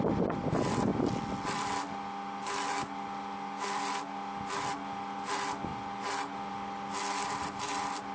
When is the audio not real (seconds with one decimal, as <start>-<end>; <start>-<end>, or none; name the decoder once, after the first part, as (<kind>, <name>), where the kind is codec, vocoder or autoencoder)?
none